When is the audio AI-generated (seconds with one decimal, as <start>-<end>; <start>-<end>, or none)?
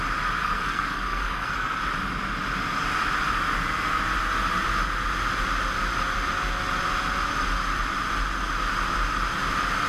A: 0.4-1.8